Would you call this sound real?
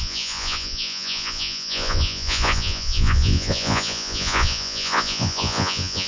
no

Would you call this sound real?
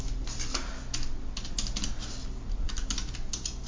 yes